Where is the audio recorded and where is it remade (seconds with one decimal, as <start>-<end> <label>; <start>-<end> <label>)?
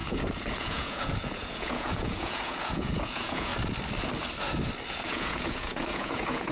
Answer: 0.0-3.5 remade; 3.5-4.9 recorded; 4.9-6.5 remade